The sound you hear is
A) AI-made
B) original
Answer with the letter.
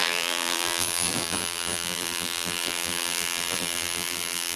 A